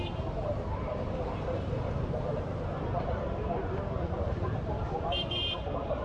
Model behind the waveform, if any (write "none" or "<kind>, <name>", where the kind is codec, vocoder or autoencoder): vocoder, BigVGAN v2